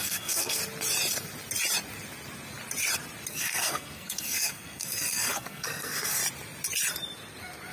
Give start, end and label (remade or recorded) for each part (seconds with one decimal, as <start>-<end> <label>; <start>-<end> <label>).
0.0-0.6 remade; 0.6-3.3 recorded; 3.3-6.2 remade; 6.2-7.7 recorded